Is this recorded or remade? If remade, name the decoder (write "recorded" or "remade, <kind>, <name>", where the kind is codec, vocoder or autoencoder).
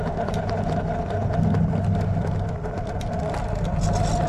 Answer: recorded